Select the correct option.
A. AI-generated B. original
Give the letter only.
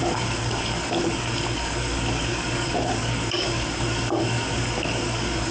A